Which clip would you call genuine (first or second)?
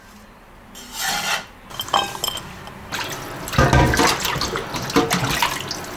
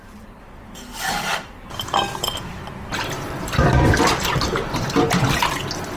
first